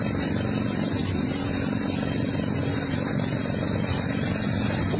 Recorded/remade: recorded